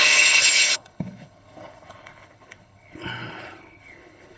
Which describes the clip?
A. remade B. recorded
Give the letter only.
A